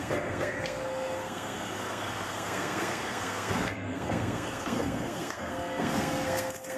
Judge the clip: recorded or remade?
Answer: remade